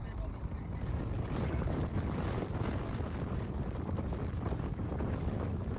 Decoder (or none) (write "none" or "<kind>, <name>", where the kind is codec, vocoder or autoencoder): vocoder, BigVGAN v2